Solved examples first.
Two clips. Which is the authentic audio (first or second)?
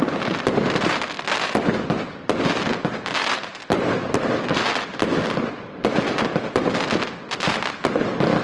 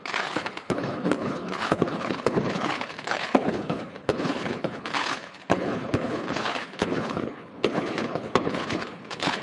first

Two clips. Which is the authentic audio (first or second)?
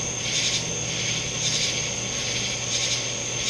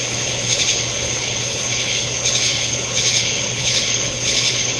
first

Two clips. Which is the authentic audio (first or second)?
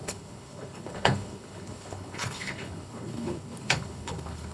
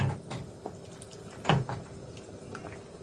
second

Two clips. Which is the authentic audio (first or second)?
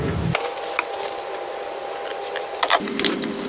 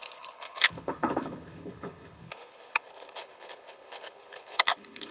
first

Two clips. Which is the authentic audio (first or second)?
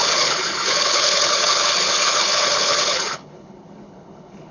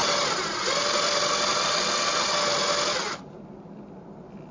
second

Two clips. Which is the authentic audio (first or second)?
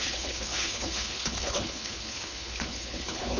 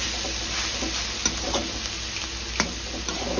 second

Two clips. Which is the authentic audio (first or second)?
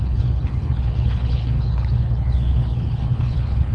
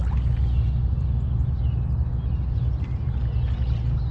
second